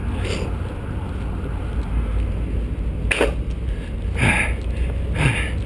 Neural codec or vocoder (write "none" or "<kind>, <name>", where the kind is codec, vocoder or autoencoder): none